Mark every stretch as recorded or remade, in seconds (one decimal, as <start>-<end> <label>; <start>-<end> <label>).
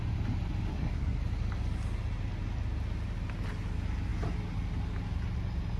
0.0-0.7 recorded; 0.7-1.2 remade; 1.2-5.8 recorded